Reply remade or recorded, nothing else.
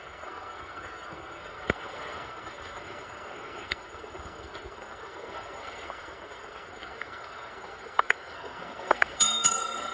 remade